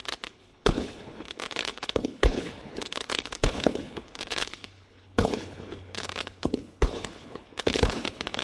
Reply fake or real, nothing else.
fake